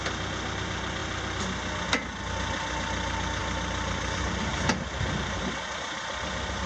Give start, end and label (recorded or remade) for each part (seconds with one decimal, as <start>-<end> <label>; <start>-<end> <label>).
0.0-6.7 recorded